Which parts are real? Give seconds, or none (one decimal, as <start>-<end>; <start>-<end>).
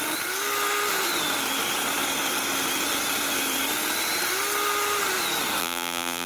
0.0-5.6